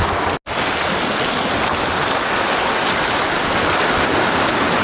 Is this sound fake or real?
real